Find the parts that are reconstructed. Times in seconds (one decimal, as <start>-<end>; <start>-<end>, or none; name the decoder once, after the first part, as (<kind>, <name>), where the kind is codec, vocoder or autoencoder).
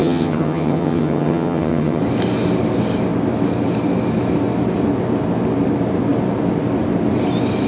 0.0-2.0 (vocoder, HiFi-GAN)